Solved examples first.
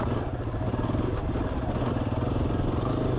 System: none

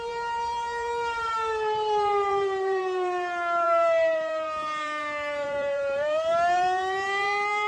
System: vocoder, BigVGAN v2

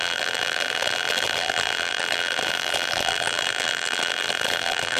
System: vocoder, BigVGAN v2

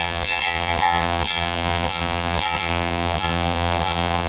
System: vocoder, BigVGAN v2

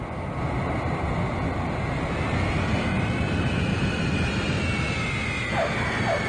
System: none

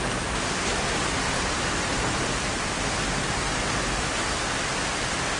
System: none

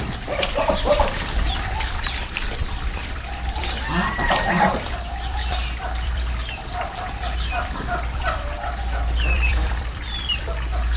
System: vocoder, BigVGAN v2